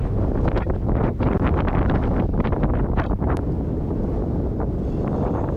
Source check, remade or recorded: recorded